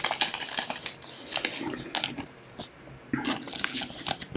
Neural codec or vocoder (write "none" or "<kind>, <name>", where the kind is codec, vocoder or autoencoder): none